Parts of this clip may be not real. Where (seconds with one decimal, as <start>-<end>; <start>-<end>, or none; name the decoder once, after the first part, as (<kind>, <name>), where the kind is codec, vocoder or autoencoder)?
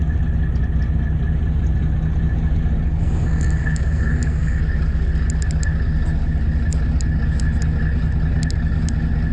3.0-4.6 (codec, SNAC)